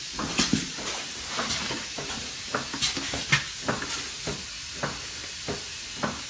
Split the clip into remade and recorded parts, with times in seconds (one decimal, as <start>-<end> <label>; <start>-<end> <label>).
0.0-0.6 recorded; 0.6-3.8 remade; 3.8-6.3 recorded